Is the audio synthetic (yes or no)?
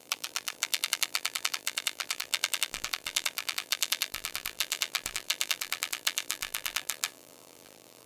yes